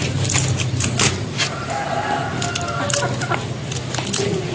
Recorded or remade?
recorded